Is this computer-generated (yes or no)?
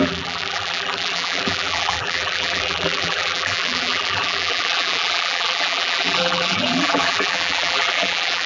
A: yes